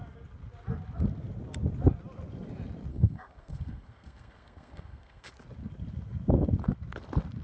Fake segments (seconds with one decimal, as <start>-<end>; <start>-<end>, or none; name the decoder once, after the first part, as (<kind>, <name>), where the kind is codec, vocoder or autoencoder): 2.9-5.3 (codec, SNAC)